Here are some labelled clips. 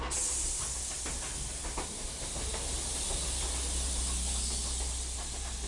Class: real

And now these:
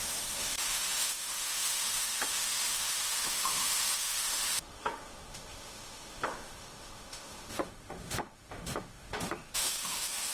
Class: fake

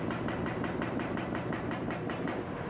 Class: real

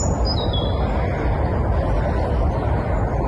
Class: real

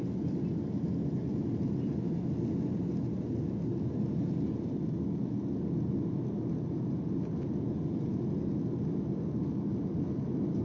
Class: real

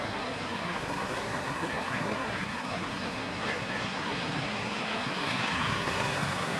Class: fake